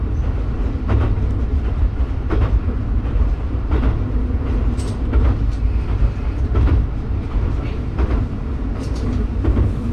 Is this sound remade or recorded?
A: remade